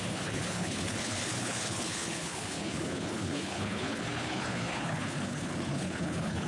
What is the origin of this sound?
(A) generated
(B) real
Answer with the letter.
A